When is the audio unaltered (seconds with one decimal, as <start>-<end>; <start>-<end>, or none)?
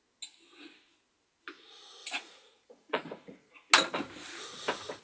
0.0-2.0; 3.5-5.0